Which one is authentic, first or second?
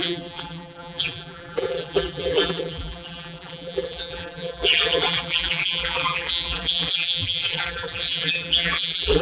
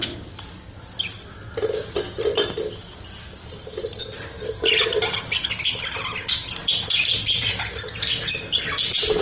second